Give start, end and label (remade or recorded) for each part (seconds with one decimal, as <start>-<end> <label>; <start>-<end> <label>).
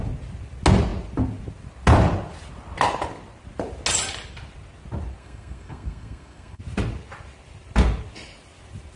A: 0.0-5.2 recorded; 5.2-6.6 remade; 6.6-9.0 recorded